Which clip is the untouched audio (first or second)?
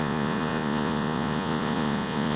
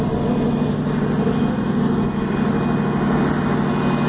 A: second